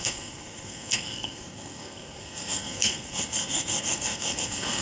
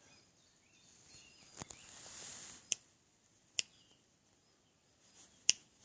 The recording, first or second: second